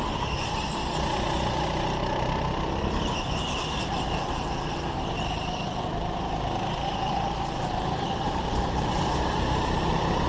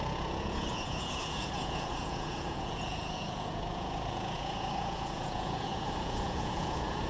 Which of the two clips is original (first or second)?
first